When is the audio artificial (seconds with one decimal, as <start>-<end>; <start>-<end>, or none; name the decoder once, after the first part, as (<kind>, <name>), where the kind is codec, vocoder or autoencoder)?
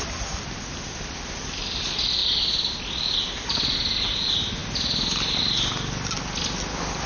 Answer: none